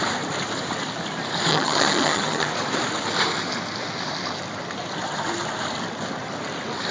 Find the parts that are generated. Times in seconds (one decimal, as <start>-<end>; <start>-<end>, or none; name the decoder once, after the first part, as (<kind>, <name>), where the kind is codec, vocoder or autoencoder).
1.5-2.5 (vocoder, HiFi-GAN)